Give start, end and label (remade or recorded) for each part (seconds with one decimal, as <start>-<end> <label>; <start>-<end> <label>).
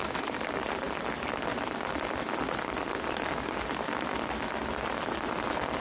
0.0-5.8 recorded